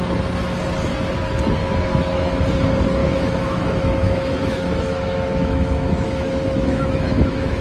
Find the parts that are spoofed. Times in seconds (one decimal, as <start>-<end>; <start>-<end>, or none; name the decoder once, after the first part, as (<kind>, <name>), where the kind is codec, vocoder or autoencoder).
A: 1.6-2.4 (autoencoder, DAC-VAE); 3.0-7.6